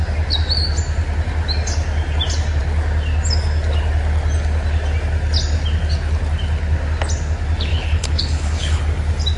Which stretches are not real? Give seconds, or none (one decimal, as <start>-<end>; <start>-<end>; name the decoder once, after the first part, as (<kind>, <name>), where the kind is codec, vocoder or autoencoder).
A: 7.7-8.8 (codec, HILCodec)